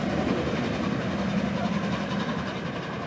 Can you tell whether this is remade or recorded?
recorded